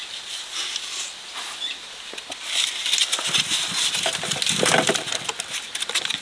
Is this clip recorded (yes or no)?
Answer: yes